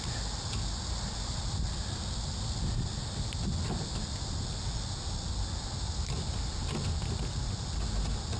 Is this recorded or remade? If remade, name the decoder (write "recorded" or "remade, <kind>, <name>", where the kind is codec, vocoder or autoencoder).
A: recorded